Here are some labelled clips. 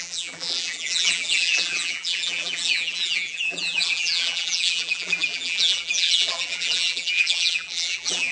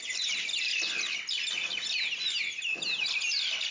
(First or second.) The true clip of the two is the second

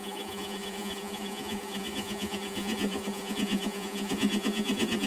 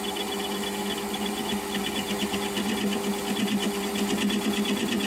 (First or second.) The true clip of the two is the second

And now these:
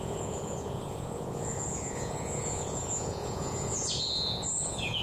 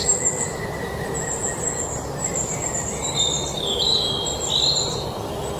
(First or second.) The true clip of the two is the second